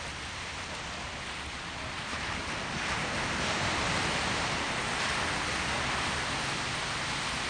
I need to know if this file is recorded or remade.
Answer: recorded